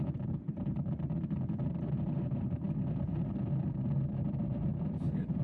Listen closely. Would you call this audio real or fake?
fake